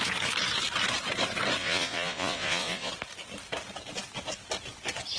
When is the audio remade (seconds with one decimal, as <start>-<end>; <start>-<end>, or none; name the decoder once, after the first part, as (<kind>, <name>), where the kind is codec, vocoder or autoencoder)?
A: 1.6-2.9 (vocoder, Vocos)